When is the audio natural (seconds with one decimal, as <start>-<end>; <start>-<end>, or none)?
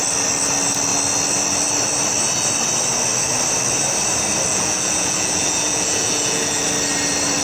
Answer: 0.0-4.5; 6.6-7.4